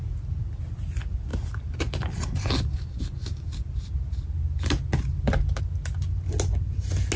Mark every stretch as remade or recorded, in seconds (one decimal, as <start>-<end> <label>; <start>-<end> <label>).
0.0-7.2 recorded